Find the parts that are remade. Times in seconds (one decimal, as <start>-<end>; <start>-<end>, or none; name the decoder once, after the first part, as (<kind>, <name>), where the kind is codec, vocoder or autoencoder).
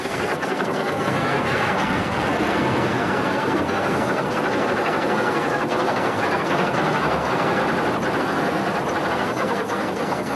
0.0-7.6 (codec, SNAC); 8.2-8.6; 9.1-10.4